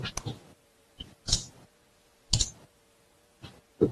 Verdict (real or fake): real